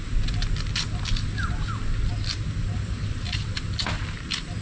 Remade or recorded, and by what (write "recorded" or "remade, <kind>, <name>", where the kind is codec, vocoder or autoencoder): recorded